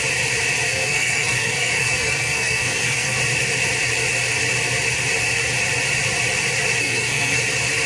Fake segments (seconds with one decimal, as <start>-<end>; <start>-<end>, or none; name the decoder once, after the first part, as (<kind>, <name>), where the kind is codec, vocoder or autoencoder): 0.7-3.2 (codec, SNAC); 6.8-7.4